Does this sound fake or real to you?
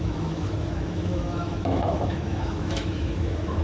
fake